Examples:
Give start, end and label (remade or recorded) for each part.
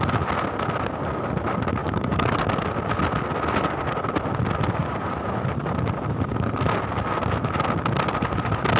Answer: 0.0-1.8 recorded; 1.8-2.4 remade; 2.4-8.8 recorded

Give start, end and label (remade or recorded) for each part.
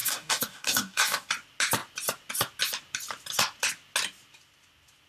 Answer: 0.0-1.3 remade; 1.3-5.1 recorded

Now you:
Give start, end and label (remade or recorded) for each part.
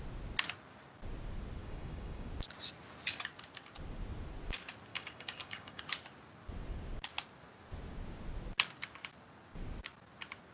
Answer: 0.0-1.6 recorded; 1.6-2.3 remade; 2.3-4.9 recorded; 4.9-5.8 remade; 5.8-10.5 recorded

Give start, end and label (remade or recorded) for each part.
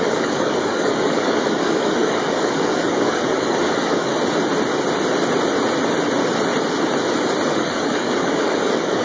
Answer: 0.0-4.1 remade; 4.1-7.5 recorded; 7.5-9.0 remade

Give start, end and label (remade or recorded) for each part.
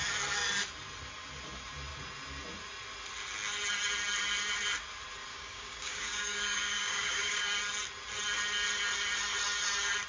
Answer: 0.0-5.3 recorded; 5.3-7.6 remade; 7.6-10.1 recorded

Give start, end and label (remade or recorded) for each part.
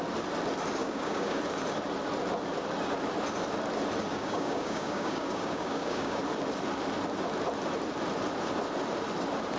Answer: 0.0-0.8 recorded; 0.8-1.4 remade; 1.4-4.1 recorded; 4.1-6.2 remade; 6.2-9.6 recorded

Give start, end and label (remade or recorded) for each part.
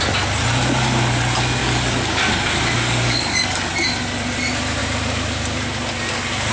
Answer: 0.0-1.6 recorded; 1.6-3.7 remade; 3.7-6.5 recorded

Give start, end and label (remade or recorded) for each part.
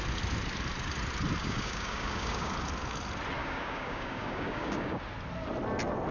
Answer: 0.0-1.4 recorded; 1.4-2.5 remade; 2.5-3.4 recorded; 3.4-5.0 remade; 5.0-6.1 recorded